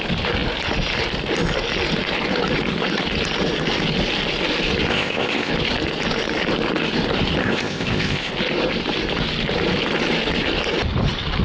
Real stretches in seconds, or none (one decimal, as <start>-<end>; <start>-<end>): 0.0-4.9; 5.5-7.4; 8.3-11.4